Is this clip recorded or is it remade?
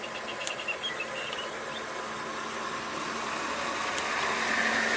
recorded